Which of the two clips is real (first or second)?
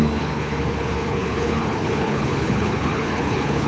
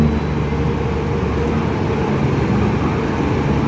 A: second